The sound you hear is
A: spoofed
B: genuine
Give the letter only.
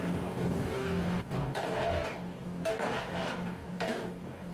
A